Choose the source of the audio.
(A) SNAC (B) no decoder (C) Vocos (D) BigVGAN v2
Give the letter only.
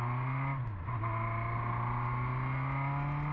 B